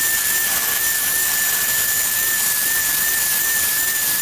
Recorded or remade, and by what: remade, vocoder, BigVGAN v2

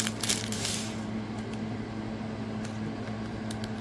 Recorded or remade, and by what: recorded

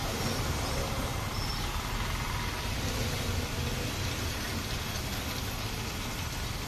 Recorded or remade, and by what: recorded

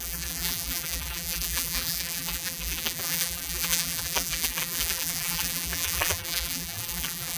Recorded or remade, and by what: remade, vocoder, BigVGAN v2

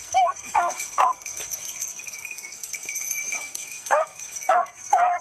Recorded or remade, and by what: remade, codec, SNAC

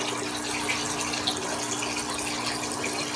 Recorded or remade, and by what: recorded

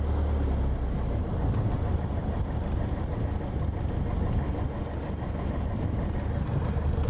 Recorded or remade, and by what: recorded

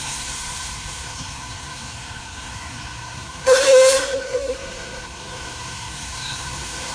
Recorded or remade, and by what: remade, codec, SNAC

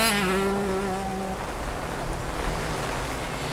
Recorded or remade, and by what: recorded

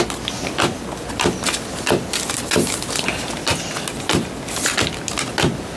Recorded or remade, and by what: recorded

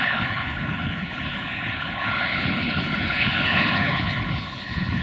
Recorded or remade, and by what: remade, codec, HILCodec